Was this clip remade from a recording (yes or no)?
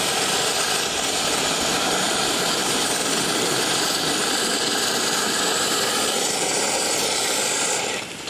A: yes